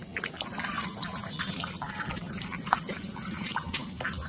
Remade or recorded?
recorded